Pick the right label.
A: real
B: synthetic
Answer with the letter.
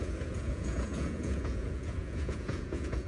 B